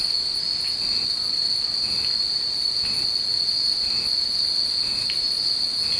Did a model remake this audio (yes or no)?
no